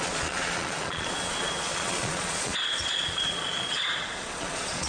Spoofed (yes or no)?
yes